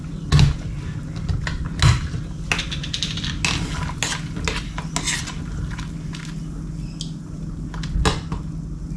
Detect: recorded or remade recorded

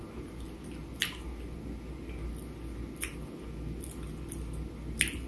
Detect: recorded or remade recorded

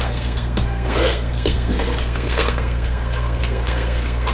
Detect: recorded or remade remade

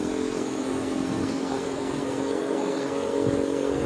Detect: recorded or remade remade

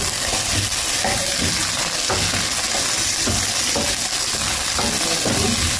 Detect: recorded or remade recorded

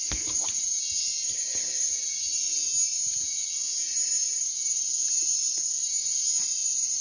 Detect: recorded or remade recorded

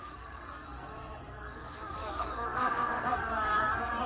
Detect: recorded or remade remade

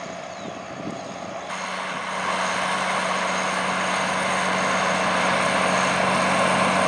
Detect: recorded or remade recorded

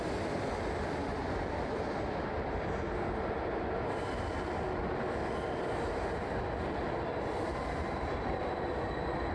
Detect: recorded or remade recorded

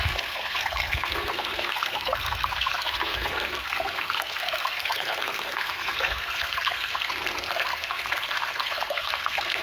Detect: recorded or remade remade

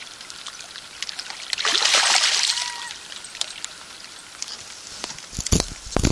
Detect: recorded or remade recorded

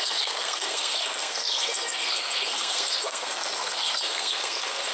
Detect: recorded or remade remade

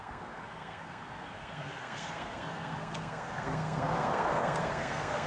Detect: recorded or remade remade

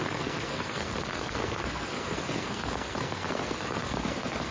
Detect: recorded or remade remade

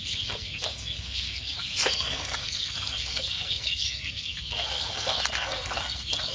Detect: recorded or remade remade